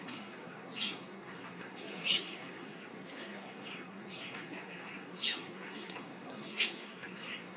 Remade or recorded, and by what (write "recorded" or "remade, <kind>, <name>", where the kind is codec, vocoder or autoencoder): remade, codec, SNAC